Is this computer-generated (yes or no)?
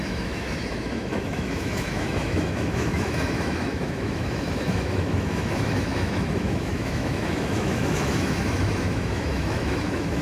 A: yes